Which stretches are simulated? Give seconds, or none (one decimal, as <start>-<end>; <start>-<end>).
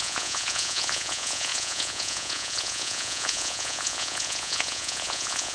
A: 0.0-5.5